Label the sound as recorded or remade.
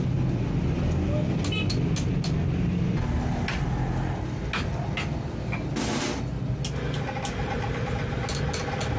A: recorded